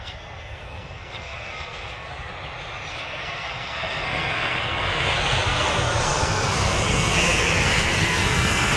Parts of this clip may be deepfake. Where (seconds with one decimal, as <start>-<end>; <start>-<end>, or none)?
0.0-2.3; 2.9-8.8